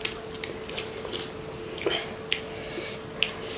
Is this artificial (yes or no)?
no